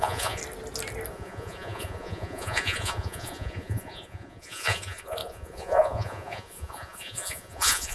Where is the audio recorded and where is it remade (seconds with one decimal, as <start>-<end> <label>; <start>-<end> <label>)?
0.0-0.4 remade; 0.4-1.1 recorded; 1.1-7.9 remade